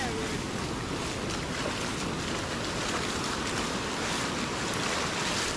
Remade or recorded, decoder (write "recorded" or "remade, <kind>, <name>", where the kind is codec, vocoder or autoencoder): recorded